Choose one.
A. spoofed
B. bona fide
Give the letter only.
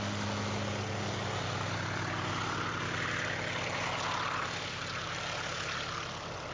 B